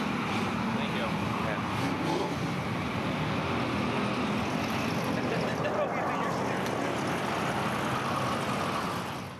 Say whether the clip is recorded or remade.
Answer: recorded